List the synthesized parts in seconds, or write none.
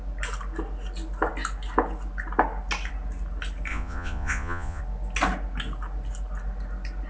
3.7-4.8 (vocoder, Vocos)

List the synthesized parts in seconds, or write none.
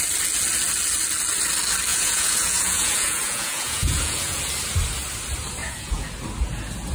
1.9-4.4 (vocoder, Vocos); 5.6-6.1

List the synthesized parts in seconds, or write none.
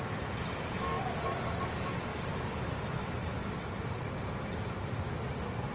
none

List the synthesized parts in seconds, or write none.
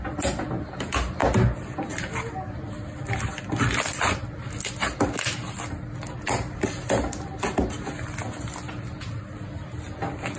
none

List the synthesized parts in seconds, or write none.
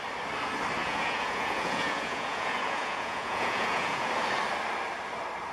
0.8-4.1 (vocoder, Vocos)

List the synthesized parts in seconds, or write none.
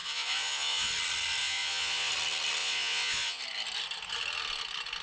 0.0-0.9 (vocoder, Vocos); 1.4-2.1; 2.6-3.4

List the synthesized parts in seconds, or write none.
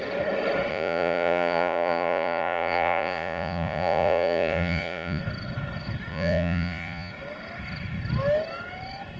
0.7-5.2 (vocoder, Vocos); 6.1-7.1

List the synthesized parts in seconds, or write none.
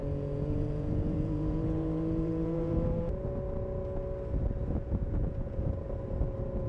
0.0-3.1 (vocoder, Vocos); 4.6-5.7